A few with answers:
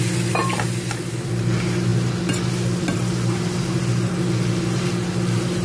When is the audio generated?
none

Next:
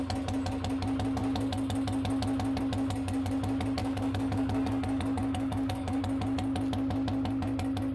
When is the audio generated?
3.8-6.0 (codec, DAC)

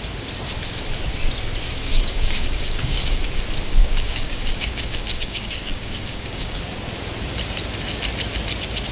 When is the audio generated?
1.8-3.2 (codec, DAC); 3.8-6.6

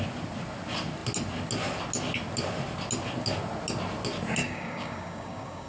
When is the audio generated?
4.4-5.7 (codec, DAC)

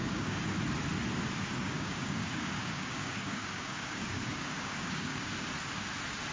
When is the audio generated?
0.0-0.6 (codec, DAC); 1.5-5.3